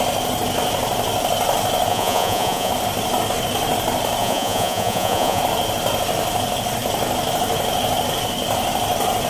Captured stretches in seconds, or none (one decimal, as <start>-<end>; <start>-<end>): 0.0-1.9; 2.7-4.2; 5.4-9.3